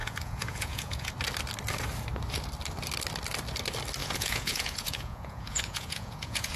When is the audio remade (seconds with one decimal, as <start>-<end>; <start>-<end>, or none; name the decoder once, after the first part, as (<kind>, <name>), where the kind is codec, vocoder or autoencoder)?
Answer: 0.0-1.1 (vocoder, Vocos); 4.0-6.6